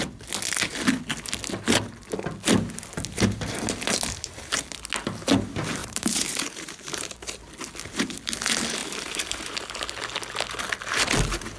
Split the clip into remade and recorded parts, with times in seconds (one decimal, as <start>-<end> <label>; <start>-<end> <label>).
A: 0.0-5.8 recorded; 5.8-7.4 remade; 7.4-8.8 recorded; 8.8-10.0 remade; 10.0-11.6 recorded